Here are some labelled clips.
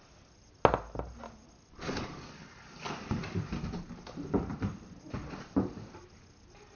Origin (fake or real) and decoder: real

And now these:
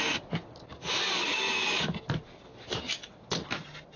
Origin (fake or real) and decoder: real